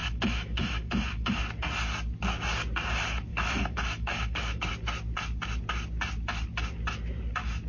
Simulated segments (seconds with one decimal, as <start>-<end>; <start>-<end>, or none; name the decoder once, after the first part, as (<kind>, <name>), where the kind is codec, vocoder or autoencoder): 0.0-1.4 (autoencoder, DAC-VAE); 3.3-4.7

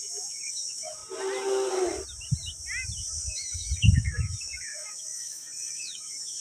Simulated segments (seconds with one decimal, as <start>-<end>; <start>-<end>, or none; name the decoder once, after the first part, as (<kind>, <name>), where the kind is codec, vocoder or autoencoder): 0.0-1.0 (autoencoder, DAC-VAE); 3.2-6.4

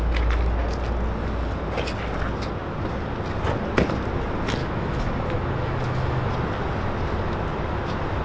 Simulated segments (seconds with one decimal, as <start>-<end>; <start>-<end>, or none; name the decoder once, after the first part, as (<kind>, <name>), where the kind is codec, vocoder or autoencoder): 4.6-6.3 (autoencoder, DAC-VAE)